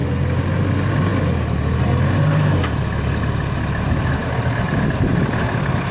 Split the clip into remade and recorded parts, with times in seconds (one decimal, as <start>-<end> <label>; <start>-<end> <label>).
0.0-5.9 recorded